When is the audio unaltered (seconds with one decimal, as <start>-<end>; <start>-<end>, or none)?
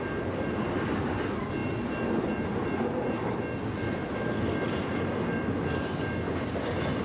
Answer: 0.0-7.0